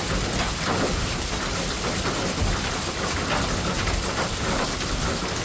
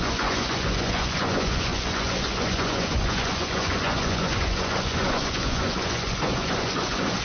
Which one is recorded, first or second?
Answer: first